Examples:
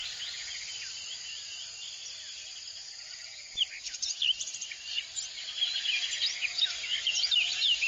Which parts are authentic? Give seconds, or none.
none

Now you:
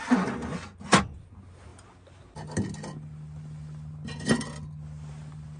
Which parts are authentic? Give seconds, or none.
0.0-5.6